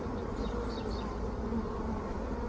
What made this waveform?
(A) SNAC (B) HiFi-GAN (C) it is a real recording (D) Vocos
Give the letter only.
C